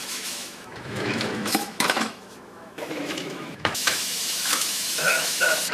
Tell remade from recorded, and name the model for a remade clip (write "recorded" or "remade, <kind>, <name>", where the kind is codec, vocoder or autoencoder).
remade, autoencoder, DAC-VAE